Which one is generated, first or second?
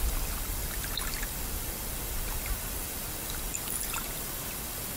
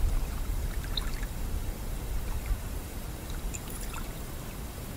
second